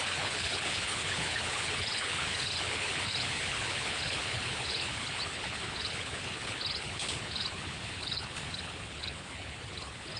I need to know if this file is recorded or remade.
remade